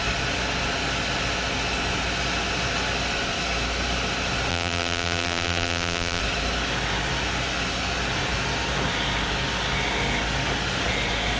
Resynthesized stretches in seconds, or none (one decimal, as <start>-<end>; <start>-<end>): 4.5-6.2